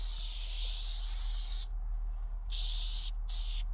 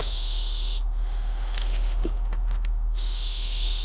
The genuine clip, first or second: first